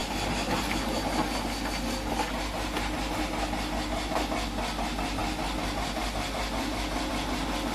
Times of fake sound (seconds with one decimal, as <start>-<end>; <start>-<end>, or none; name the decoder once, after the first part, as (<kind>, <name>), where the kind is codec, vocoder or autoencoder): none